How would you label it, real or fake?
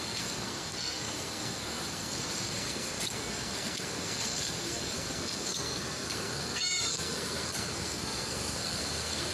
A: fake